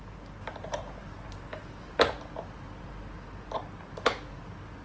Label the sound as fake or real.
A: real